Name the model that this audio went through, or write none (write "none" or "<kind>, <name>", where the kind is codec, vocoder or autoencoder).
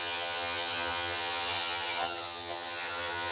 vocoder, HiFi-GAN